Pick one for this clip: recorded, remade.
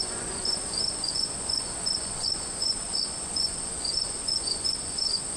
remade